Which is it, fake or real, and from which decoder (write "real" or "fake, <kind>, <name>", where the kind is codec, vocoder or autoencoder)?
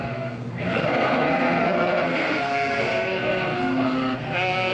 fake, codec, SNAC